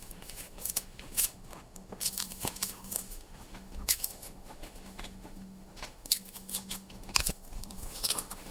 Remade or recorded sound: remade